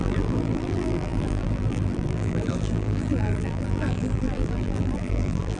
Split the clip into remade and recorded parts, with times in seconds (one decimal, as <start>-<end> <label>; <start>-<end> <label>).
0.0-5.6 remade